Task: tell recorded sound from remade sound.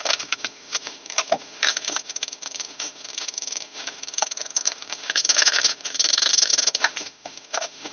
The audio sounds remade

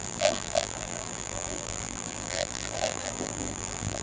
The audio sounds remade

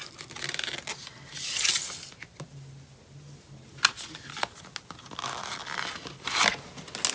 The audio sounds recorded